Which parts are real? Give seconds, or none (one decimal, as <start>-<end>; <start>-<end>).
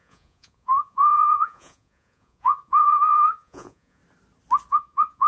4.0-4.7